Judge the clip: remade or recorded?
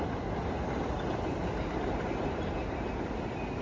recorded